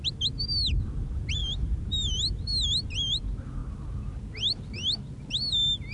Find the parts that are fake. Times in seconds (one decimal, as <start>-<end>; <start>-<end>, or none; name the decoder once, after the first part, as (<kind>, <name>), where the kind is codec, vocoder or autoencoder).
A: none